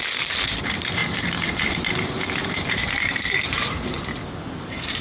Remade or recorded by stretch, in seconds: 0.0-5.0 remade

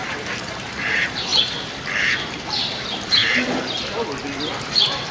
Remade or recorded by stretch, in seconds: 0.0-1.3 remade; 1.3-2.0 recorded; 2.0-3.2 remade; 3.2-4.5 recorded; 4.5-5.1 remade

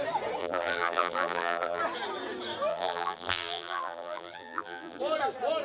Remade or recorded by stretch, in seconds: 0.0-0.4 recorded; 0.4-1.8 remade; 1.8-2.7 recorded; 2.7-5.0 remade; 5.0-5.6 recorded

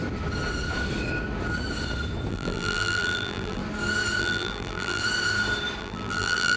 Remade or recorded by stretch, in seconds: 0.0-2.3 recorded; 2.3-3.6 remade; 3.6-4.2 recorded; 4.2-5.0 remade; 5.0-5.8 recorded; 5.8-6.6 remade

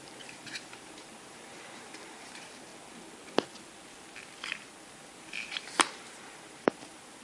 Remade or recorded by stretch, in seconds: 0.0-2.7 remade; 2.7-4.5 recorded; 4.5-7.2 remade